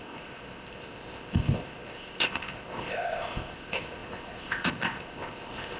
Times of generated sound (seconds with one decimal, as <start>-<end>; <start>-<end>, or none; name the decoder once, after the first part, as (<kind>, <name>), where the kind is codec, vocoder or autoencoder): 0.0-5.8 (codec, ZipCodec)